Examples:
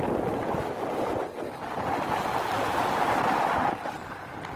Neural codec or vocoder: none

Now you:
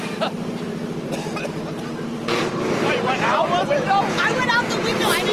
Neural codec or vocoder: vocoder, BigVGAN v2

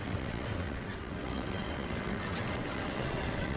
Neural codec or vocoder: vocoder, WaveNeXt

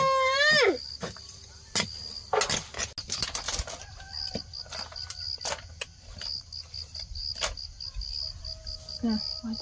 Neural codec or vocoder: none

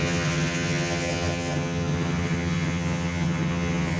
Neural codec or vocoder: vocoder, HiFi-GAN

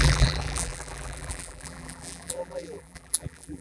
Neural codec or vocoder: vocoder, BigVGAN v2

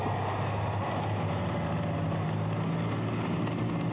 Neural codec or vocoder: none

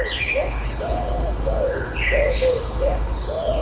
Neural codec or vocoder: codec, HILCodec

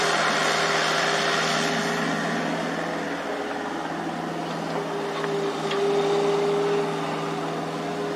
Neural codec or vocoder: none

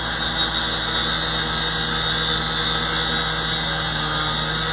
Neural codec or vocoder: none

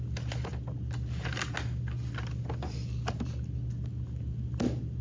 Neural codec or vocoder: none